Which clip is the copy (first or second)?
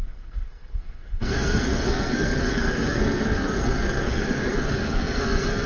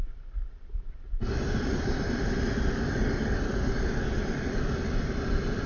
first